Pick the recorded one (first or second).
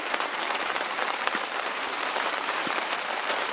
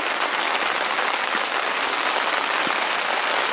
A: second